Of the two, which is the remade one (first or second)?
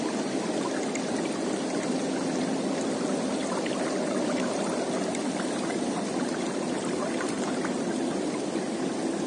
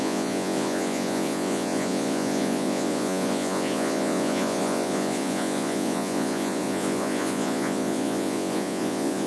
second